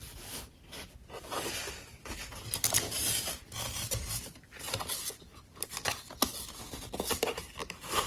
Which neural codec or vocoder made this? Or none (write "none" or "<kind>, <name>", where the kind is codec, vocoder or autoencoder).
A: none